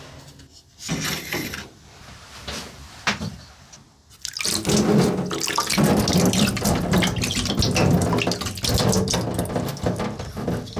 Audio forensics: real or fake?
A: real